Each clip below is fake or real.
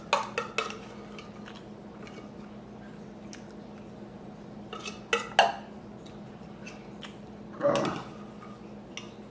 real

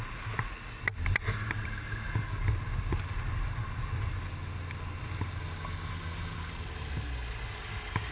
real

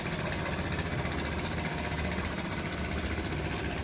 real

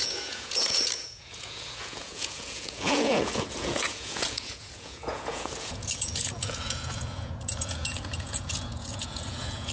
fake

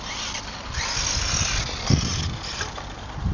fake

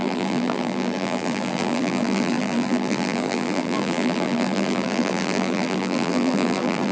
fake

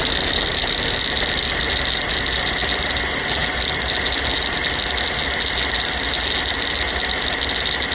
real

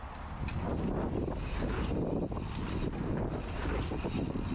real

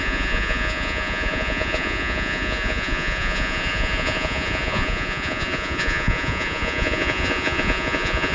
fake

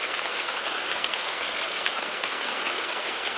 fake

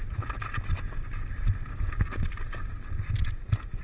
real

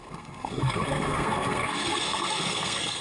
fake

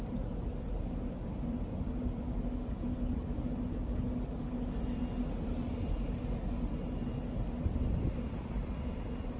real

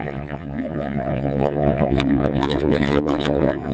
fake